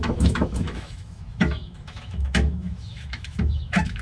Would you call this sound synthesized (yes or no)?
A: yes